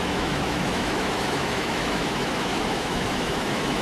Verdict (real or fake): fake